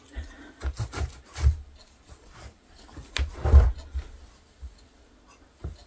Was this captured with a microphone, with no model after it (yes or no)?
yes